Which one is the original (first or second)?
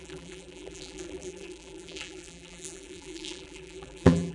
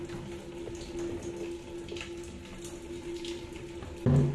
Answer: second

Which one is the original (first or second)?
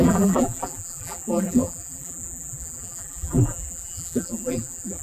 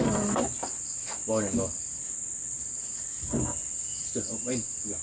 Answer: second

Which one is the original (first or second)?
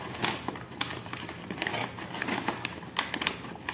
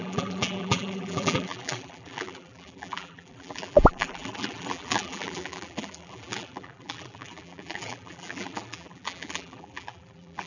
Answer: first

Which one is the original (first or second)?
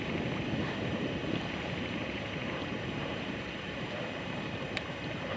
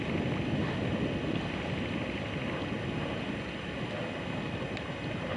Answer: second